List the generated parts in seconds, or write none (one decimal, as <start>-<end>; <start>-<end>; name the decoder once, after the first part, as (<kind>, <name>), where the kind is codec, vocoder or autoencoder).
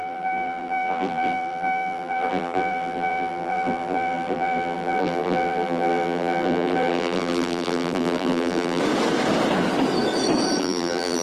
0.0-8.8 (vocoder, BigVGAN v2); 10.6-11.2